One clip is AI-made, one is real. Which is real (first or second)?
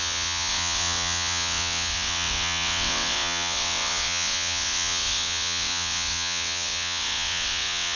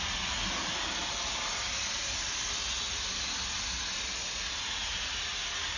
second